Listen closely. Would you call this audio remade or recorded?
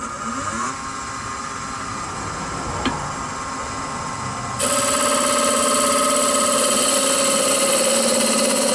recorded